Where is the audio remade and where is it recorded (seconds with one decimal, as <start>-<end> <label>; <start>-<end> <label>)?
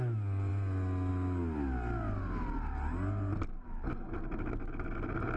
0.0-5.4 recorded